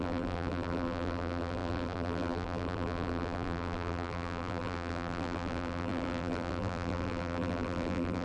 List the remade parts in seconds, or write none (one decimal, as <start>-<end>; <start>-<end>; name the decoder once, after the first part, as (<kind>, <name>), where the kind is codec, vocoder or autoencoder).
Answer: 0.0-8.2 (vocoder, BigVGAN v2)